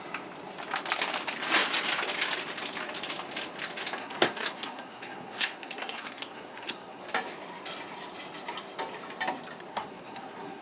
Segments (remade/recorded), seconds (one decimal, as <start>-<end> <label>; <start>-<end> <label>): 0.0-4.0 recorded; 4.0-7.0 remade; 7.0-9.7 recorded; 9.7-10.6 remade